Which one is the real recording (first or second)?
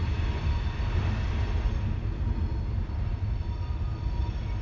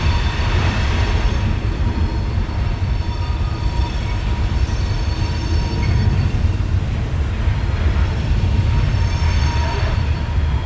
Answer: first